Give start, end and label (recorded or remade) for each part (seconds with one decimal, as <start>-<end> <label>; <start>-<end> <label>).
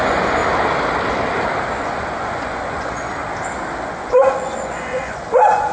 0.0-0.4 remade; 0.4-1.8 recorded; 1.8-3.1 remade; 3.1-3.8 recorded; 3.8-5.7 remade